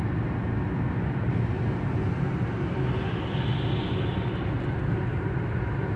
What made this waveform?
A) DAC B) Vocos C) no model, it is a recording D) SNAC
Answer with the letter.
C